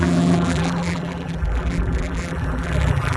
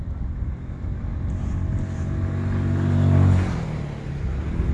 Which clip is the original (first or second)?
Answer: second